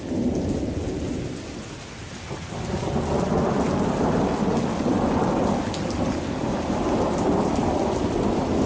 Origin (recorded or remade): recorded